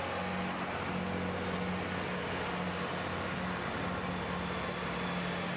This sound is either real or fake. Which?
real